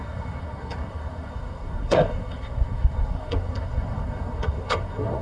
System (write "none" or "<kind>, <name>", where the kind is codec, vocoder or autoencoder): codec, SNAC